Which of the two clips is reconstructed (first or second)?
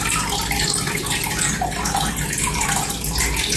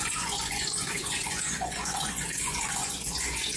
second